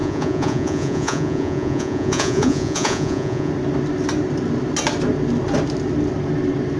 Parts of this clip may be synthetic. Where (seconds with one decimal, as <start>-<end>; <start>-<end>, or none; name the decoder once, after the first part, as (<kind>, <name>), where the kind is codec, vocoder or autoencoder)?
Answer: 0.0-3.5 (vocoder, Vocos)